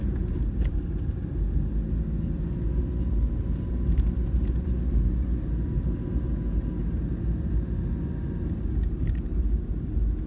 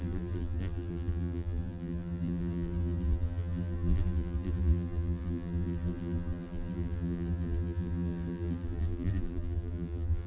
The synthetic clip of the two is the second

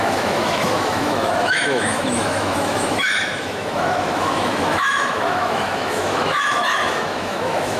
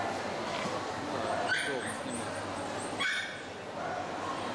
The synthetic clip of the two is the first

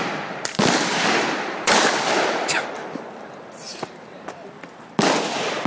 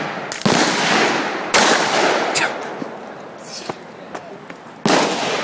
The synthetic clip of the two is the first